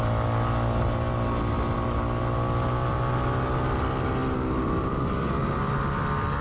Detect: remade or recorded recorded